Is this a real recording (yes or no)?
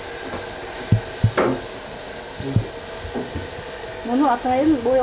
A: yes